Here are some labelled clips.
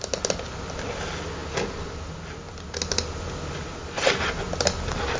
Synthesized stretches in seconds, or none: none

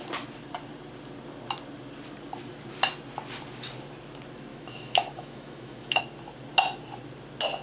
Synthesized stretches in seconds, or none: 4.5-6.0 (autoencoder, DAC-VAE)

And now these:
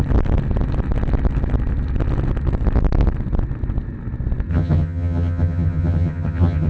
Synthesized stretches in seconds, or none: 4.5-6.7 (vocoder, HiFi-GAN)